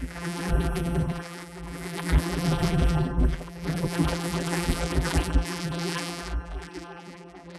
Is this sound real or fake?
fake